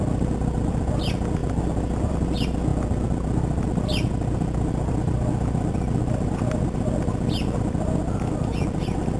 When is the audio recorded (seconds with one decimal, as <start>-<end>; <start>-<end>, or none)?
0.0-9.2